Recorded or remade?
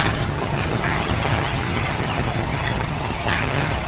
remade